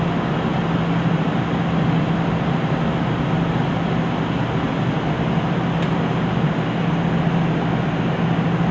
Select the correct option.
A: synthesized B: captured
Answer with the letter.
B